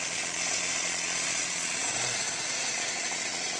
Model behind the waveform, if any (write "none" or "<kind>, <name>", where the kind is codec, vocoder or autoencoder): vocoder, Vocos